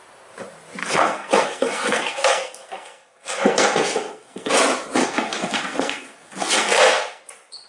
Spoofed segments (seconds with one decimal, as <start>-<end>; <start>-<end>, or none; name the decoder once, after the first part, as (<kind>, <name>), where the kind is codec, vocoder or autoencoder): 0.8-4.5 (codec, SNAC); 5.0-7.2